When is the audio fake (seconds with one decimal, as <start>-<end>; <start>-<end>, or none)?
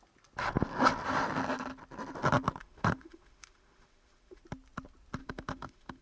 2.6-4.4; 5.2-6.0